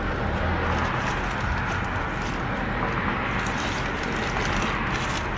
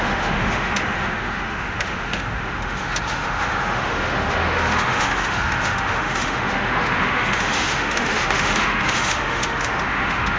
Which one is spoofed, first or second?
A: second